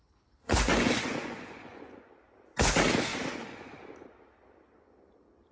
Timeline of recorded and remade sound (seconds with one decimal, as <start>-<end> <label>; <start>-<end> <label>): 0.0-0.4 recorded; 0.4-2.1 remade; 2.1-3.1 recorded; 3.1-3.7 remade; 3.7-5.5 recorded